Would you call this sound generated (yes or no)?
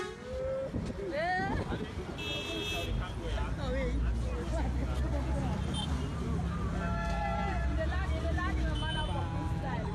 no